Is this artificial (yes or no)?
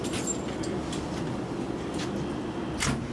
no